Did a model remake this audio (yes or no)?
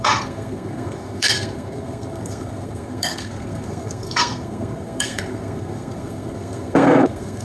yes